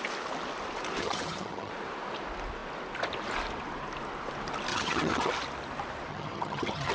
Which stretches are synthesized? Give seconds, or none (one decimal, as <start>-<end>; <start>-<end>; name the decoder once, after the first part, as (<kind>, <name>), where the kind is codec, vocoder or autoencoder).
1.0-1.7 (vocoder, HiFi-GAN); 4.7-5.3; 6.1-6.9